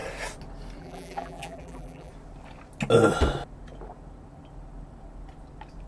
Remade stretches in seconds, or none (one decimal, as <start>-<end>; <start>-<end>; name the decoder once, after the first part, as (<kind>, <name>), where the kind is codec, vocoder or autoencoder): 0.8-2.1 (vocoder, BigVGAN v2)